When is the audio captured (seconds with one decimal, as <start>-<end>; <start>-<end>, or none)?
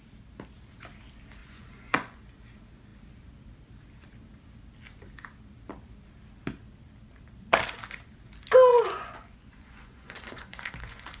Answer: 0.0-1.4; 2.2-8.7